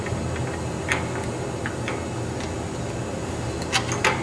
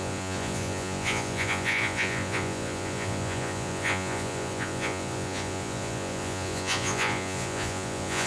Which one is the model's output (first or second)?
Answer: second